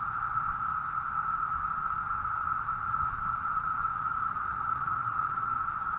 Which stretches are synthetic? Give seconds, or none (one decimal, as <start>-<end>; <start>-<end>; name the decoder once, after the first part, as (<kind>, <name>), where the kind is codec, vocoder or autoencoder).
0.0-0.7 (vocoder, Vocos); 1.4-6.0